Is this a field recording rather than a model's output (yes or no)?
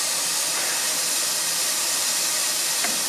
yes